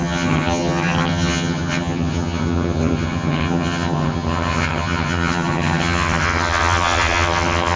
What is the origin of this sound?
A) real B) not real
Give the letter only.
B